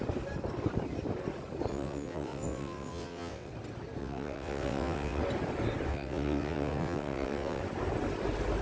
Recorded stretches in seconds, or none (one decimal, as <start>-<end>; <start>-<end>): 0.0-1.7; 3.5-4.0; 5.2-5.9; 7.6-8.6